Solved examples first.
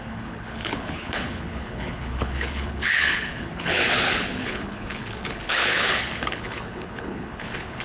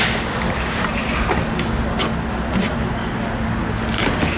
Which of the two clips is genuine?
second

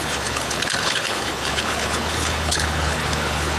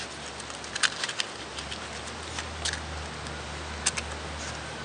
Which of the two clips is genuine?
second